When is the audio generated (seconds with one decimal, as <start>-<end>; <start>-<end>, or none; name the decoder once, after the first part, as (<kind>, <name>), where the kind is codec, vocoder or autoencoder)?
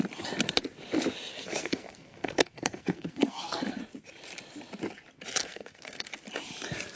1.3-3.8 (codec, SNAC); 5.4-6.1